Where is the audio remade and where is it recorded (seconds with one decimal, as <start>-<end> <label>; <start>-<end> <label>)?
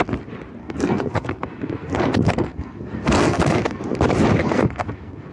0.0-0.6 recorded; 0.6-3.8 remade; 3.8-4.4 recorded; 4.4-5.3 remade